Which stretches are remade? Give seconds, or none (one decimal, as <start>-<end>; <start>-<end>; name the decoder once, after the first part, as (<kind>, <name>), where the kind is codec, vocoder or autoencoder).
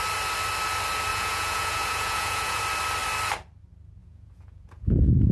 1.1-2.6 (vocoder, Vocos); 4.0-5.3